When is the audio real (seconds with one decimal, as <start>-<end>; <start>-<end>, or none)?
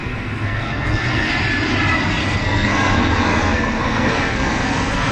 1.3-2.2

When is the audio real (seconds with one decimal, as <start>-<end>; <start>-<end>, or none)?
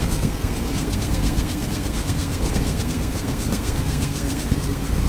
none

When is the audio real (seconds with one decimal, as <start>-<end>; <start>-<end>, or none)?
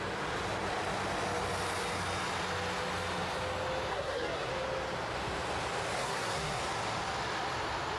0.0-3.9; 4.5-6.0; 6.6-8.0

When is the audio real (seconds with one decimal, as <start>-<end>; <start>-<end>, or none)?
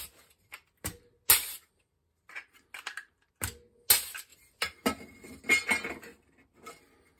0.0-7.2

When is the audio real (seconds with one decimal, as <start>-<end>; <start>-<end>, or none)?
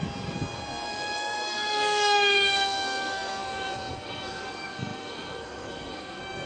none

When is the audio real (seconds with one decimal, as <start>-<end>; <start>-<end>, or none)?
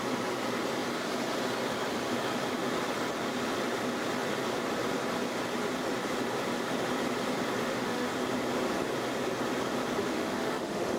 0.0-7.6; 8.1-10.0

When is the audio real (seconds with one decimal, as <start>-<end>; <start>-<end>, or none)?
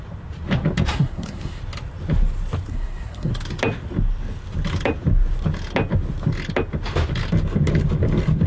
0.0-0.9; 1.6-2.7; 3.3-8.5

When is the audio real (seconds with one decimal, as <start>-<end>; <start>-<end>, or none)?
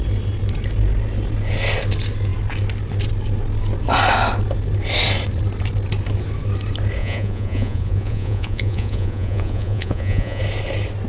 0.0-7.0; 10.4-11.1